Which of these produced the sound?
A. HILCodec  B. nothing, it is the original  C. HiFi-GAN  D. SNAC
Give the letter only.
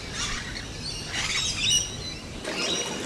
B